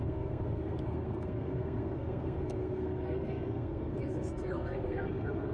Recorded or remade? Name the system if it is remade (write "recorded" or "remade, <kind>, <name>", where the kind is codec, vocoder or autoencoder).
remade, codec, SNAC